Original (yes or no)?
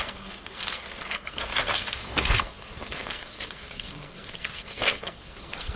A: no